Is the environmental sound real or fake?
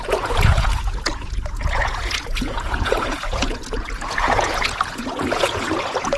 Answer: fake